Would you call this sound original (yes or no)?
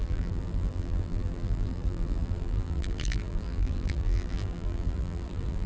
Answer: no